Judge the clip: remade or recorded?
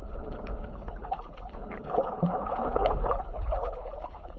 remade